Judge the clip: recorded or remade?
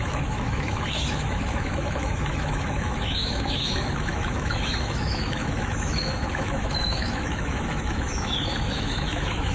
remade